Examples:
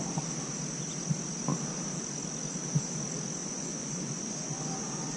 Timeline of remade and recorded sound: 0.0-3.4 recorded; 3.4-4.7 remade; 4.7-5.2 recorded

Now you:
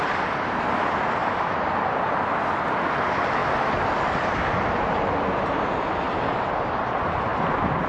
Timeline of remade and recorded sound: 0.0-1.2 recorded; 1.2-2.8 remade; 2.8-7.3 recorded; 7.3-7.9 remade

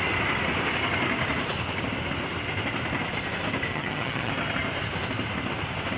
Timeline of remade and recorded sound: 0.0-3.7 recorded; 3.7-4.3 remade; 4.3-6.0 recorded

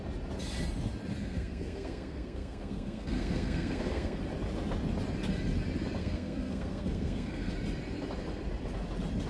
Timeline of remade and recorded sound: 0.0-1.2 recorded; 1.2-4.2 remade; 4.2-6.0 recorded; 6.0-7.5 remade; 7.5-9.3 recorded

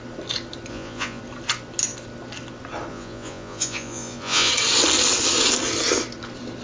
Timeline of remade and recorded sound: 0.0-0.7 recorded; 0.7-1.2 remade; 1.2-2.9 recorded; 2.9-4.5 remade; 4.5-6.6 recorded